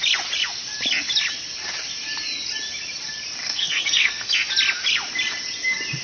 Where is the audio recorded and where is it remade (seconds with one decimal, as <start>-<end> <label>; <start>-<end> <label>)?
0.0-3.4 recorded; 3.4-4.3 remade; 4.3-6.0 recorded